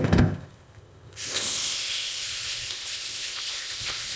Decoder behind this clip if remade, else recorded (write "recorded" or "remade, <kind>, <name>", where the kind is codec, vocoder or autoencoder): remade, codec, ZipCodec